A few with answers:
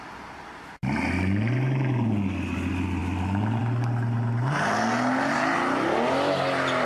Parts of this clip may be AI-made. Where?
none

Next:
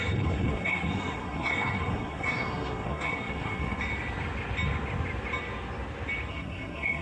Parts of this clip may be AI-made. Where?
0.0-3.8 (codec, SNAC); 6.3-7.0

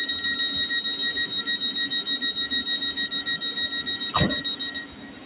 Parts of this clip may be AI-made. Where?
none

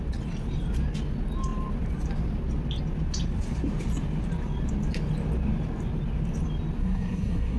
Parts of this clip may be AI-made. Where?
6.8-7.6 (codec, SNAC)

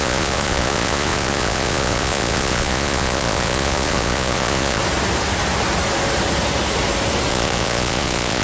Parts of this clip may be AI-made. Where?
0.0-4.8 (vocoder, Vocos); 7.3-8.4

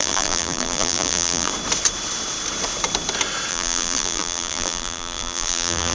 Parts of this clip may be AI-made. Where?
0.0-1.5 (vocoder, BigVGAN v2); 3.5-5.9

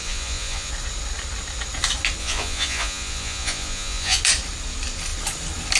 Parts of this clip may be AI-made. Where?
0.0-0.7 (vocoder, Vocos); 2.2-4.2

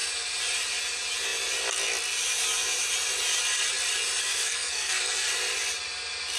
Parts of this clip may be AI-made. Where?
4.2-5.3 (codec, SNAC)